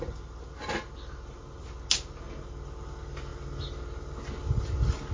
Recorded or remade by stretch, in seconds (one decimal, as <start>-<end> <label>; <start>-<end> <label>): 0.0-5.1 recorded

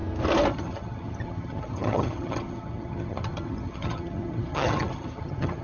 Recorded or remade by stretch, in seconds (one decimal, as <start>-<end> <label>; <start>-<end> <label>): 0.0-0.5 recorded; 0.5-5.6 remade

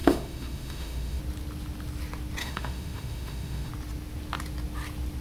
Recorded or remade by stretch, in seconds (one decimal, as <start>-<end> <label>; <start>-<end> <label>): 0.0-1.2 remade; 1.2-2.4 recorded; 2.4-3.7 remade; 3.7-5.2 recorded

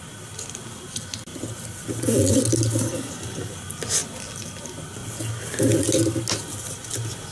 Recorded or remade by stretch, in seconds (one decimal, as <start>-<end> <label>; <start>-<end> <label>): 0.0-7.3 recorded

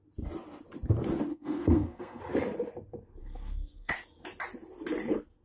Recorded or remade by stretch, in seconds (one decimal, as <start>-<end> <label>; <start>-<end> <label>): 0.0-1.3 recorded; 1.3-2.2 remade; 2.2-3.2 recorded; 3.2-3.9 remade; 3.9-5.4 recorded

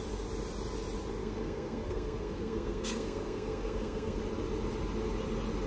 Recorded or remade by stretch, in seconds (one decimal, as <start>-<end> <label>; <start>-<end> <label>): 0.0-1.2 recorded; 1.2-4.2 remade; 4.2-5.7 recorded

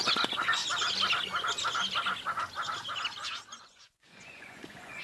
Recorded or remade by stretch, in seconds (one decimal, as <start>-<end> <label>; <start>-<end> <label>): 0.0-0.6 remade; 0.6-3.6 recorded; 3.6-5.0 remade

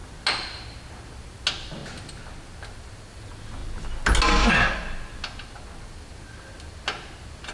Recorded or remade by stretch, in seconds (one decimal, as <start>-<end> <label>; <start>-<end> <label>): 0.0-7.5 recorded